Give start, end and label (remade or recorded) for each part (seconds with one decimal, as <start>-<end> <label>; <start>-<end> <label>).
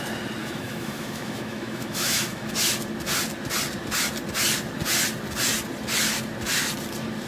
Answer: 0.0-0.4 recorded; 0.4-2.5 remade; 2.5-7.3 recorded